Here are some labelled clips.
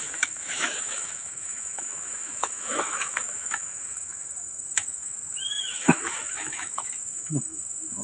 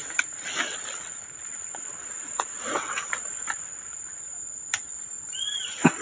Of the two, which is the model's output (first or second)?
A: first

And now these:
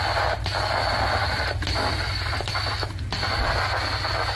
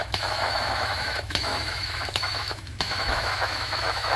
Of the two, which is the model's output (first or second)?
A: second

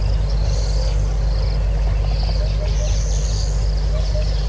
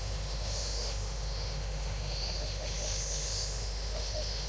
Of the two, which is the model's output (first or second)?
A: second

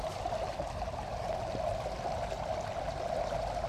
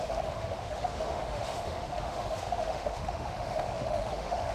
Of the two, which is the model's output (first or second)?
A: second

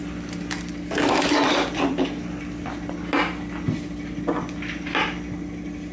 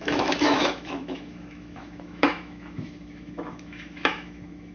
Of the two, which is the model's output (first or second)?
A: second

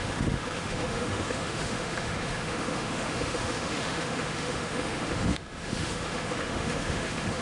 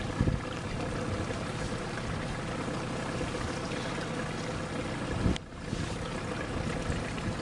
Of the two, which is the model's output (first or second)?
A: first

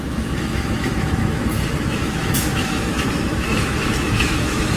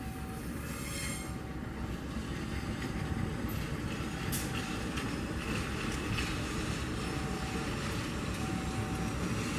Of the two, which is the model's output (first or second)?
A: first